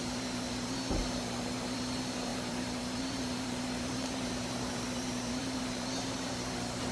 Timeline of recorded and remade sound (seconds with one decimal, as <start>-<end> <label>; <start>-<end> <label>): 0.0-6.9 remade